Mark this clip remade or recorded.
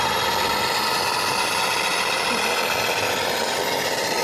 recorded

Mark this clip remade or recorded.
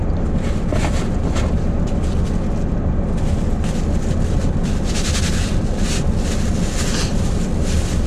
recorded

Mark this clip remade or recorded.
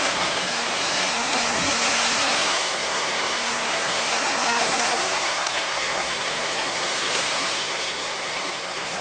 remade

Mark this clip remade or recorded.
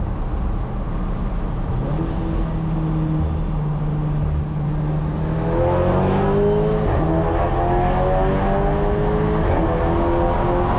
recorded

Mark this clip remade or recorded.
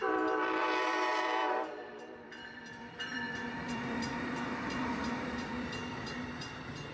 remade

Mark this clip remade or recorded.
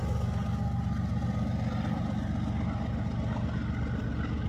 recorded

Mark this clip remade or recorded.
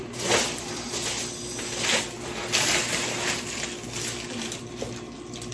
recorded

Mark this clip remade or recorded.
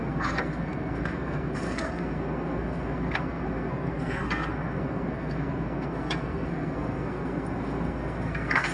remade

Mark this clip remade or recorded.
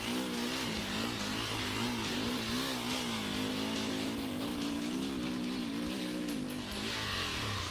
recorded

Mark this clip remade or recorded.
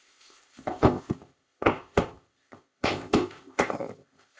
remade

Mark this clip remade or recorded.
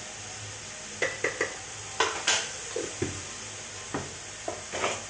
recorded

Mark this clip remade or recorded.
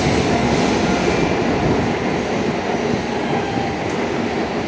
recorded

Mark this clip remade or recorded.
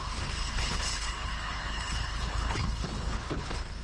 remade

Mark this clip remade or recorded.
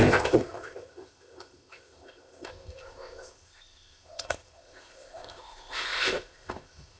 remade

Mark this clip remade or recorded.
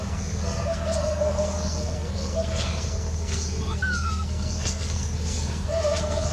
remade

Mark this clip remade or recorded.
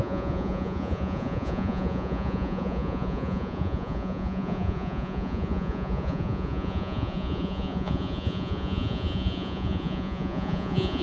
remade